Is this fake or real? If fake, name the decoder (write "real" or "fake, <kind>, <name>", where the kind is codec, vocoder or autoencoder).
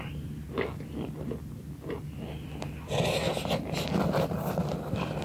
real